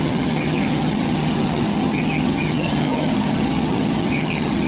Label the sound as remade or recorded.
remade